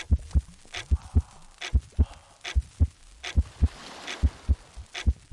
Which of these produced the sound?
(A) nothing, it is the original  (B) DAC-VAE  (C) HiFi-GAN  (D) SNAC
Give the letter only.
A